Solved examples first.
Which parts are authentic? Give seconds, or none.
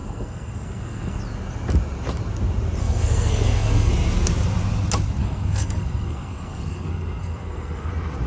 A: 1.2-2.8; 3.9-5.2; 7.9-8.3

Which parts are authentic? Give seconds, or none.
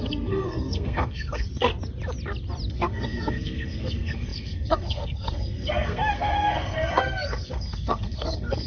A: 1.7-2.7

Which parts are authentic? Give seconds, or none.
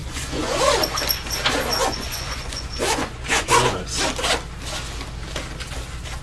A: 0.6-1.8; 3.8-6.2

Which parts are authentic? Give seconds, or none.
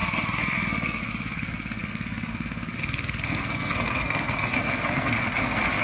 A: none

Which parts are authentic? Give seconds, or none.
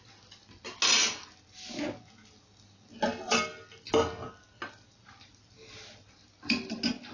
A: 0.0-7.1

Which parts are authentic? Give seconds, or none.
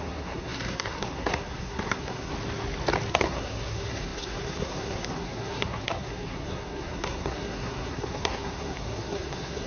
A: 2.3-3.1